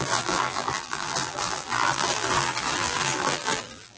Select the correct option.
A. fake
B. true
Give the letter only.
A